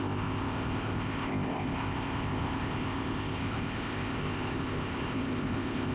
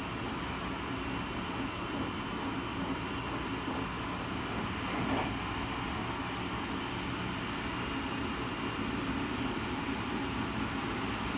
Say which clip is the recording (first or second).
second